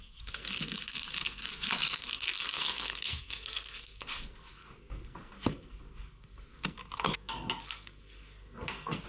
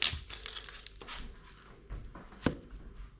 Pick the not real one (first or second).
first